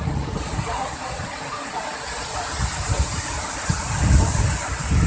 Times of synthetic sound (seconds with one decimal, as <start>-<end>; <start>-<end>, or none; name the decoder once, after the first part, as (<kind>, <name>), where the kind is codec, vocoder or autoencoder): none